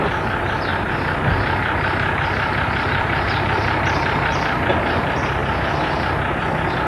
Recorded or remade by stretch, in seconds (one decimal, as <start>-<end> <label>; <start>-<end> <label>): 0.0-0.7 recorded; 0.7-4.8 remade; 4.8-6.9 recorded